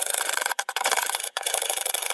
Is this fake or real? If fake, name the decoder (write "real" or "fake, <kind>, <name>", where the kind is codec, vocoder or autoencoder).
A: fake, vocoder, Vocos